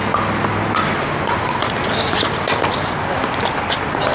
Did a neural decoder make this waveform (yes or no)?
no